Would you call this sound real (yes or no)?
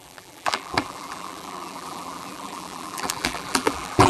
no